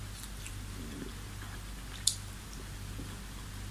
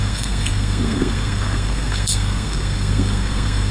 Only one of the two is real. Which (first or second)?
first